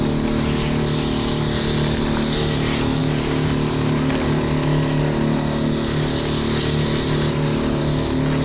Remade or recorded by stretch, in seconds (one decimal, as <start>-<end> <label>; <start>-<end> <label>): 0.0-8.4 recorded